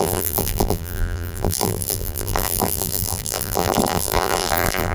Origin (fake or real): fake